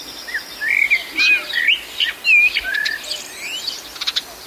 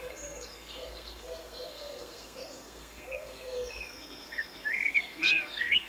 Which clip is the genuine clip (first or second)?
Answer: first